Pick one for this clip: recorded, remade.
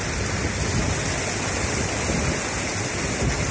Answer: recorded